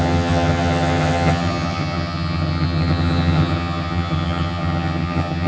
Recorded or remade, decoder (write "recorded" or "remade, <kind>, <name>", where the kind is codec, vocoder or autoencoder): remade, vocoder, HiFi-GAN